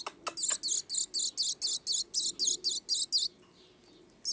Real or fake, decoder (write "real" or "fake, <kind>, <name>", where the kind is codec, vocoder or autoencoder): real